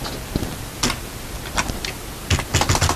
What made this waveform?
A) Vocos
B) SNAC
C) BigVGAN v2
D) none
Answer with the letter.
D